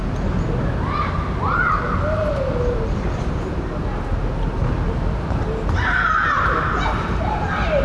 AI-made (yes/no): no